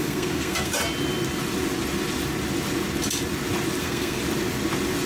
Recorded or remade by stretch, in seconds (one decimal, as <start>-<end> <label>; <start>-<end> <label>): 0.0-0.7 remade; 0.7-3.8 recorded; 3.8-4.2 remade; 4.2-5.1 recorded